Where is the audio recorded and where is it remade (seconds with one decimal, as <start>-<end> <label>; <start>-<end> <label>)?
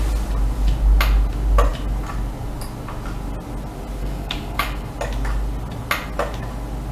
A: 0.0-4.0 recorded; 4.0-4.9 remade; 4.9-6.9 recorded